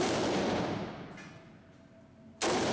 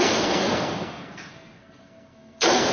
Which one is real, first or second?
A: first